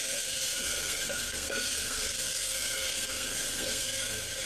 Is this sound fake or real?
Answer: fake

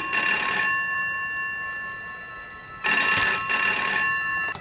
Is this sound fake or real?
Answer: real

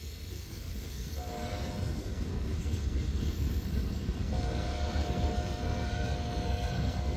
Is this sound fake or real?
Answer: fake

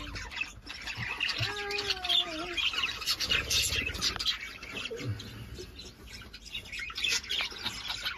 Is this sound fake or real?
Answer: real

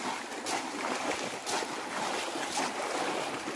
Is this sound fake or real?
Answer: real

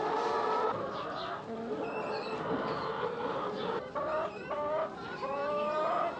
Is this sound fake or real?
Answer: real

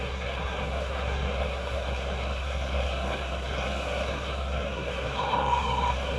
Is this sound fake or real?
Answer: fake